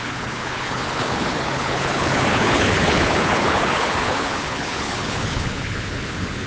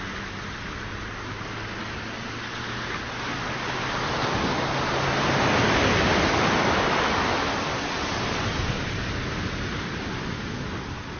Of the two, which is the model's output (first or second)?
first